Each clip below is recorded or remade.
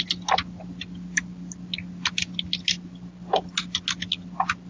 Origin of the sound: recorded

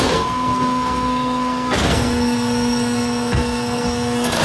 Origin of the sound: remade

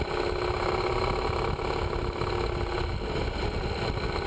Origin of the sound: recorded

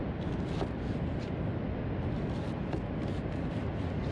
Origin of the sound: recorded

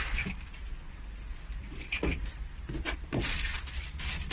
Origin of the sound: recorded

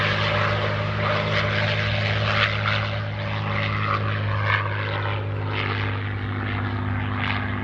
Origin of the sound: recorded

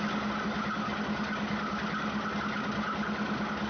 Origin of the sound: recorded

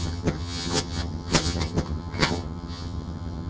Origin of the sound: remade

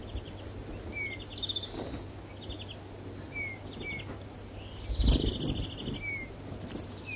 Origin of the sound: recorded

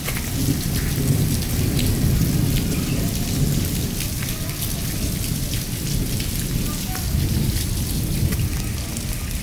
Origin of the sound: recorded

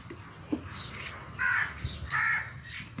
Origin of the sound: recorded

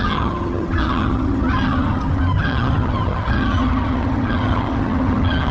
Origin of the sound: remade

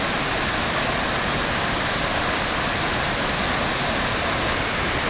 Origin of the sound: recorded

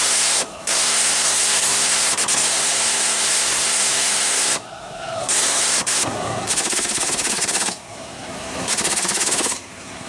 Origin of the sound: remade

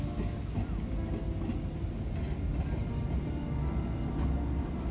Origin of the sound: recorded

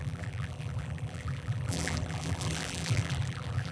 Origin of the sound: remade